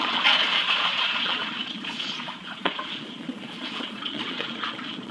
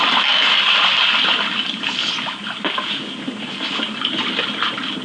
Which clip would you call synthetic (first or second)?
first